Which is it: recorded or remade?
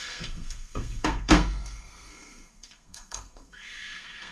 remade